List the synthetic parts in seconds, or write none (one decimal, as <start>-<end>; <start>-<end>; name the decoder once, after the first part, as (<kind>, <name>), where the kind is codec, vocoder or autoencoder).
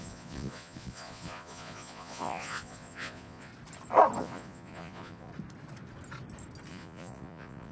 0.0-3.5 (vocoder, Vocos); 4.2-5.3; 6.7-7.7